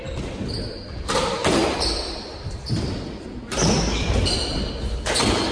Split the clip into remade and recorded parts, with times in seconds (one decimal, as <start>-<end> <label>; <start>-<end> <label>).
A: 0.0-5.5 recorded